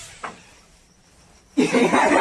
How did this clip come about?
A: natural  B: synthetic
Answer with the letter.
B